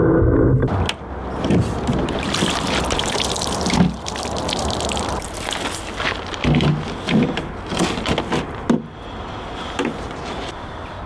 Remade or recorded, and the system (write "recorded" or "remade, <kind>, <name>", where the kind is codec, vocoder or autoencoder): recorded